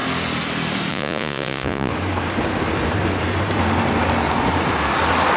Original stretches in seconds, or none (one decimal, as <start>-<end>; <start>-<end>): 0.0-0.9; 1.9-5.4